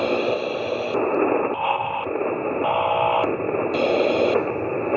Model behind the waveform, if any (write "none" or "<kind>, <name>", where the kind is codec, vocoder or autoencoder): none